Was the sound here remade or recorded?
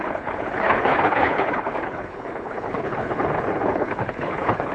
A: remade